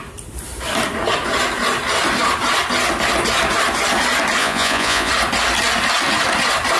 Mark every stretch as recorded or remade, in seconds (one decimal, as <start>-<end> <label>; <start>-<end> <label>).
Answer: 0.0-4.4 recorded; 4.4-5.1 remade; 5.1-6.8 recorded